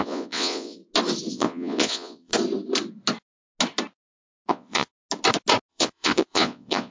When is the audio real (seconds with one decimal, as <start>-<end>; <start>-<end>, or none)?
0.8-1.3; 2.3-4.5; 4.9-5.7